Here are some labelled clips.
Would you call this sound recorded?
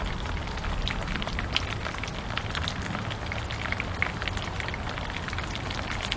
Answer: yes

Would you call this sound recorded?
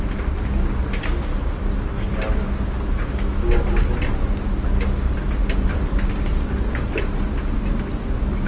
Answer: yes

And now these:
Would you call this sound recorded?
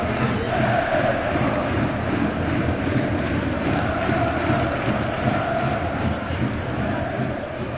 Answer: no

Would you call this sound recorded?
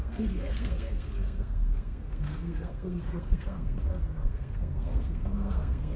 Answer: no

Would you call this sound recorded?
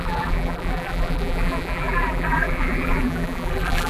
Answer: no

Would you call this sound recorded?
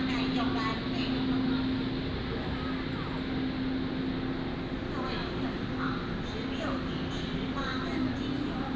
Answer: yes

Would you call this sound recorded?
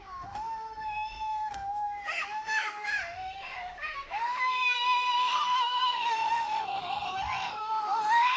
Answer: no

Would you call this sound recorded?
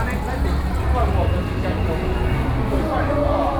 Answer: yes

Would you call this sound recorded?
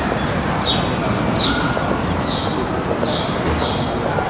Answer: yes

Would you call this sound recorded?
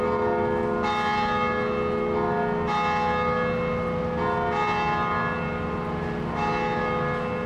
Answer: yes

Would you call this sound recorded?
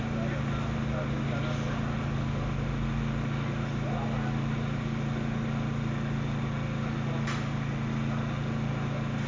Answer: yes